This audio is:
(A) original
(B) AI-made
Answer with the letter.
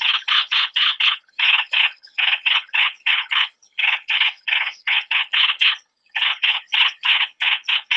B